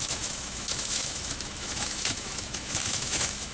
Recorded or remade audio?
remade